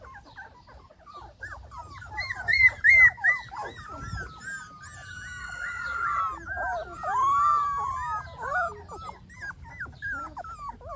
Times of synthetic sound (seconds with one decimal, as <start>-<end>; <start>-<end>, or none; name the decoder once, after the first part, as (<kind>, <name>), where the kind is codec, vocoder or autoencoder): 5.4-6.2 (vocoder, WaveNeXt)